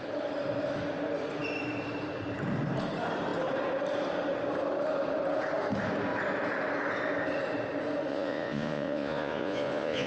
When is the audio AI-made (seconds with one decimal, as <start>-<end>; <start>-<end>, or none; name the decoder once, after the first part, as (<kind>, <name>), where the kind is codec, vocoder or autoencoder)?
8.1-10.1 (vocoder, Vocos)